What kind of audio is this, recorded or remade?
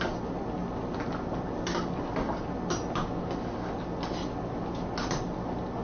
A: recorded